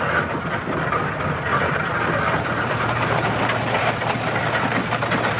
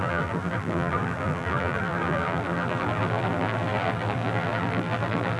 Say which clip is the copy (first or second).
second